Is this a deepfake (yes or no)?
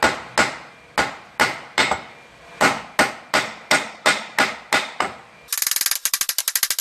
no